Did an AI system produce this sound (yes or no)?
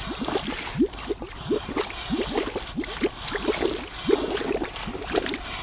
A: no